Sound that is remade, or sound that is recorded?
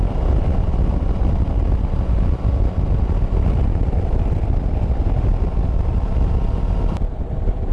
remade